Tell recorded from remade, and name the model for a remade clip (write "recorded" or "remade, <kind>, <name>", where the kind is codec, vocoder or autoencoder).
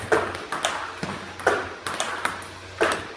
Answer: recorded